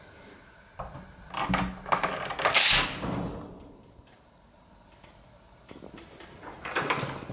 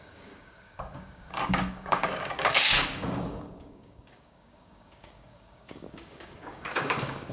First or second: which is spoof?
second